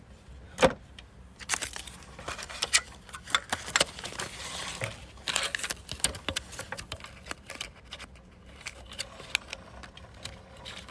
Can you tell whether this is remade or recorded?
recorded